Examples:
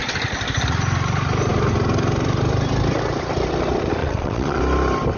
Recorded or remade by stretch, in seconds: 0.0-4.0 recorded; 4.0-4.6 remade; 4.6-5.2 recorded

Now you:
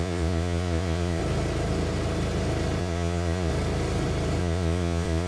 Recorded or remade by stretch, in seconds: 0.0-1.2 remade; 1.2-2.8 recorded; 2.8-3.5 remade; 3.5-4.4 recorded; 4.4-5.3 remade

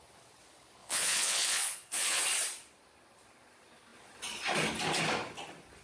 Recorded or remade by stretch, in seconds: 0.0-0.8 recorded; 0.8-2.2 remade; 2.2-5.8 recorded

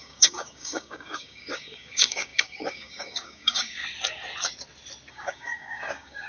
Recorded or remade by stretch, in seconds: 0.0-3.8 remade; 3.8-5.1 recorded; 5.1-6.3 remade

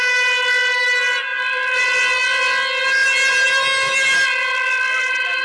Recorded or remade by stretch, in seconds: 0.0-1.3 recorded; 1.3-1.8 remade; 1.8-3.0 recorded; 3.0-5.4 remade